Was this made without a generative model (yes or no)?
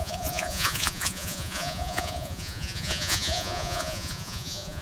no